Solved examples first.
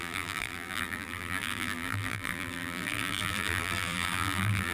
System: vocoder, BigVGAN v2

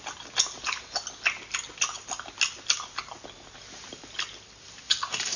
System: none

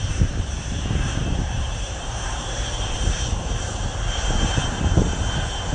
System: vocoder, BigVGAN v2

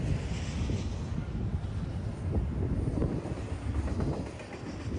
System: none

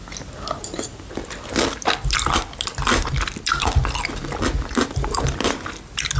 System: none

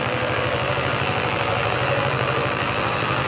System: vocoder, BigVGAN v2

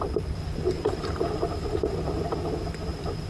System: none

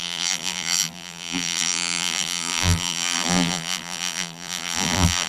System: vocoder, BigVGAN v2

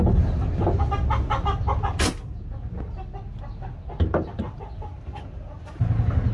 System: none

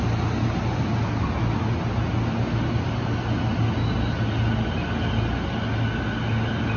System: none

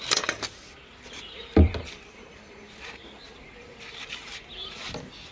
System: none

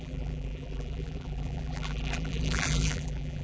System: vocoder, BigVGAN v2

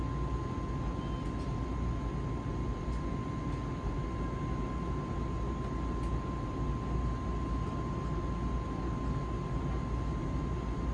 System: none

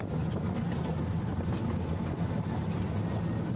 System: none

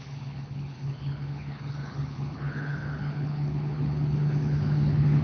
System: codec, HILCodec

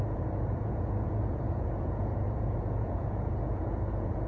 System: vocoder, Vocos